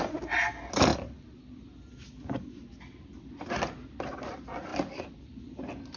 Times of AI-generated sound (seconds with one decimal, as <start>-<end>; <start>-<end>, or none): none